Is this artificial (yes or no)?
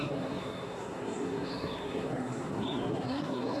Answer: yes